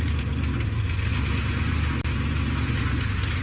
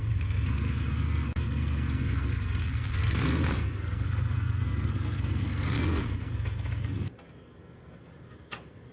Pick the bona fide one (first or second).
first